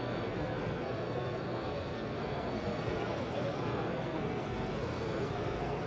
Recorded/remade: remade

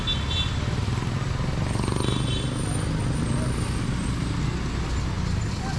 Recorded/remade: recorded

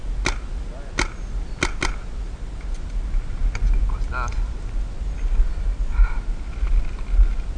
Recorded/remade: recorded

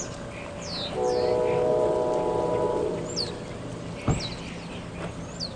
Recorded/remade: recorded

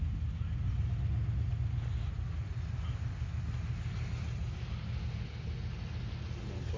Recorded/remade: recorded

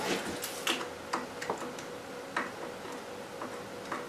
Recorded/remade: recorded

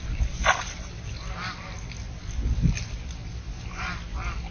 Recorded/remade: recorded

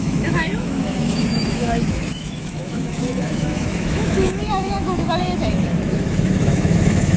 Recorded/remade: remade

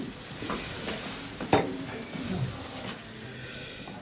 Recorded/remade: recorded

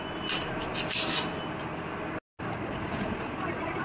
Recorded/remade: recorded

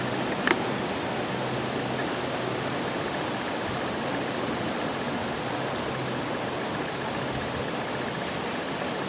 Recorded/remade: remade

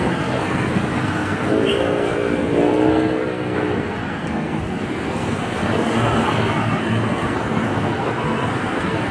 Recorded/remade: remade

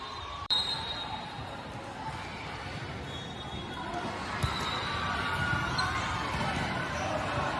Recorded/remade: remade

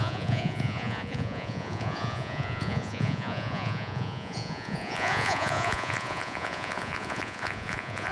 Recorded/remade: remade